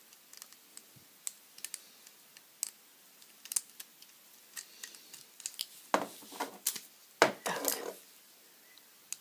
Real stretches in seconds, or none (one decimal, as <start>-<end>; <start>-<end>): 0.0-9.2